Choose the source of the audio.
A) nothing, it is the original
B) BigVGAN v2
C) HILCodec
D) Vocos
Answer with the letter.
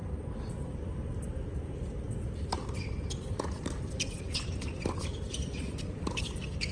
B